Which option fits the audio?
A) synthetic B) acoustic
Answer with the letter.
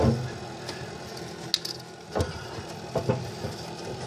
B